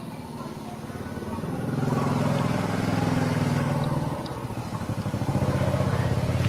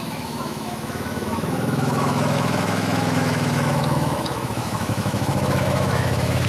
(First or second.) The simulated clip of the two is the second